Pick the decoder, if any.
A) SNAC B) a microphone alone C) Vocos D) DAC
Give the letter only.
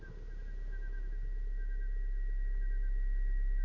B